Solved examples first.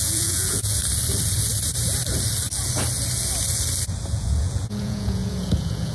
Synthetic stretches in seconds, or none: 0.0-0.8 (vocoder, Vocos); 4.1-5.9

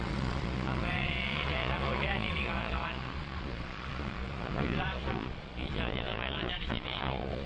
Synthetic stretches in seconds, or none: 0.0-7.5 (vocoder, Vocos)